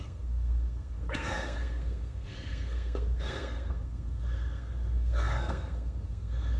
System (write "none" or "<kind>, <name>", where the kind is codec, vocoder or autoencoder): codec, SNAC